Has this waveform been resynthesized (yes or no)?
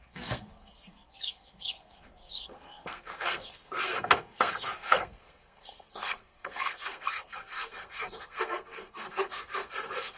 yes